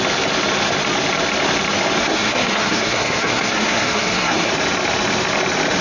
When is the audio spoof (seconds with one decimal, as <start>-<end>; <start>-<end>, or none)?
2.0-4.5